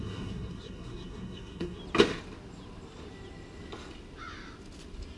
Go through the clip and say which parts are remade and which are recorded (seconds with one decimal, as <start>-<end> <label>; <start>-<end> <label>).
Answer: 0.0-1.8 remade; 1.8-5.2 recorded